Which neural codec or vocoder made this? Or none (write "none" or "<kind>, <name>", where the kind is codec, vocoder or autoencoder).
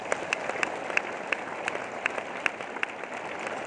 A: none